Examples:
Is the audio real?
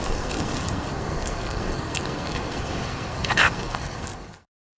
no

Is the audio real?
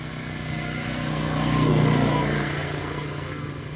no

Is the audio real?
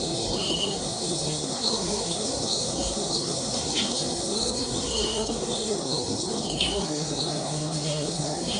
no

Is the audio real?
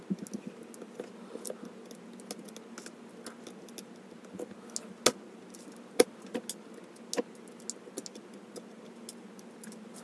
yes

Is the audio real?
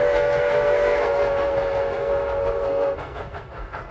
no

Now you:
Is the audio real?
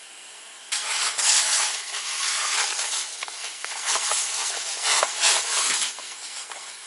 no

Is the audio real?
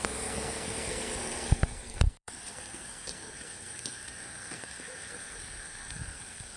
no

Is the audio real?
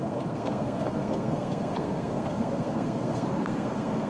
no